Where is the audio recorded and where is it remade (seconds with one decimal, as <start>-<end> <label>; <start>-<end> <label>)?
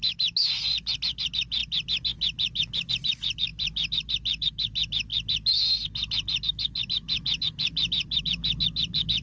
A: 0.0-9.2 recorded